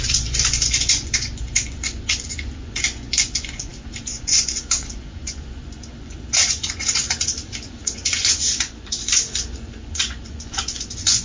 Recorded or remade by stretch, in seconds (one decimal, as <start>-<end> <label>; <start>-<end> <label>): 0.0-11.2 remade